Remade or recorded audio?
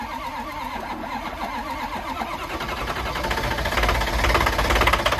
recorded